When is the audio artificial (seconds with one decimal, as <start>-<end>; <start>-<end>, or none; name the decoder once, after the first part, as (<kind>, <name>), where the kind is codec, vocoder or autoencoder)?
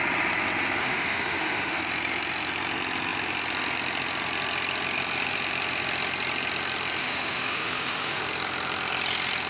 0.8-1.8 (autoencoder, DAC-VAE); 7.0-8.2